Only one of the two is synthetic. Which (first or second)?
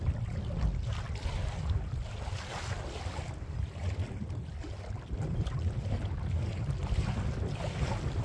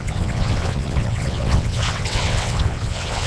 second